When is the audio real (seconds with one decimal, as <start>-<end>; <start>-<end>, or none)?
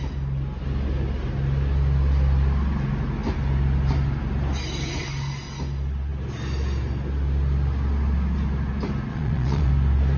0.0-9.1; 9.7-10.2